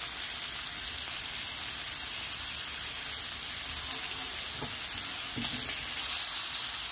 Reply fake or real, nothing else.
real